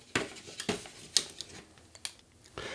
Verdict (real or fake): real